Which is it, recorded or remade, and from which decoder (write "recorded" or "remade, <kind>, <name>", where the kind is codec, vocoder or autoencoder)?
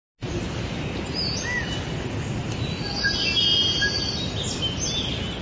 recorded